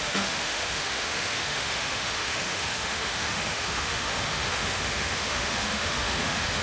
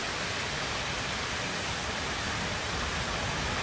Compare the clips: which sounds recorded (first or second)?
second